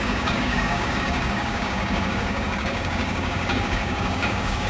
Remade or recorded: remade